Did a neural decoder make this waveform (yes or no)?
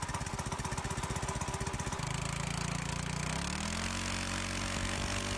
no